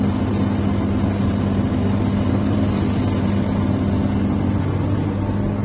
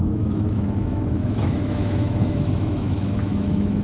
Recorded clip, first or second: first